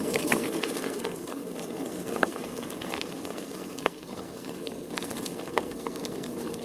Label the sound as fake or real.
fake